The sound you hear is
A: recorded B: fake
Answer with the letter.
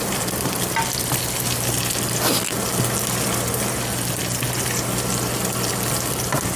A